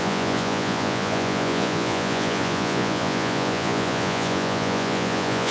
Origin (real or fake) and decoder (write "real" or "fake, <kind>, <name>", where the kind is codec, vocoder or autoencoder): fake, vocoder, Vocos